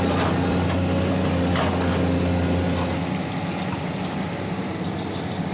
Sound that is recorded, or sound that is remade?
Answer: recorded